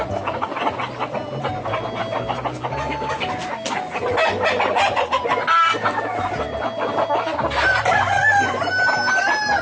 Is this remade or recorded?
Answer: recorded